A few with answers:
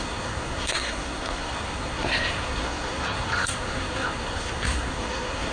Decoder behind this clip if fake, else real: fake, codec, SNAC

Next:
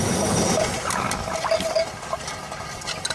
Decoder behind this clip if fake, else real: real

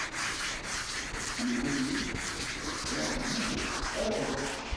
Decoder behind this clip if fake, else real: real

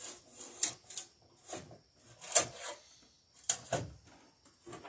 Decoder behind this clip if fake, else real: real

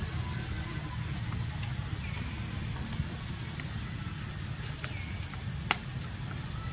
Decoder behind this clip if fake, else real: real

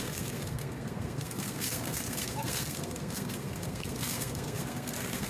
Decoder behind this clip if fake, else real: fake, codec, SNAC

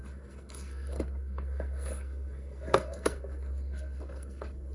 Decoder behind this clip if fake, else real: fake, codec, SNAC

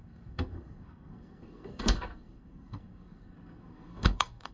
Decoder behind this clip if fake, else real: fake, codec, SNAC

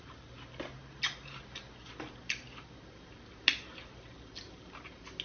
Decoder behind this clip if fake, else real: real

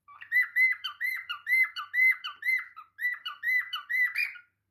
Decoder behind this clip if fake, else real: fake, vocoder, BigVGAN v2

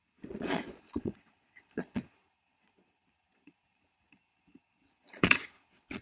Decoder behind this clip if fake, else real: fake, vocoder, Vocos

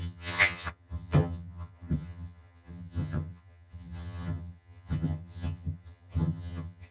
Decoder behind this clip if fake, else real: fake, vocoder, HiFi-GAN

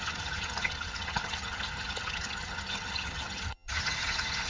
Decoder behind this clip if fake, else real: fake, vocoder, HiFi-GAN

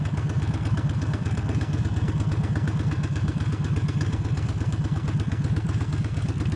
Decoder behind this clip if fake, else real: fake, codec, SNAC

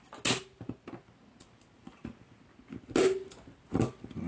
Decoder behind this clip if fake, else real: real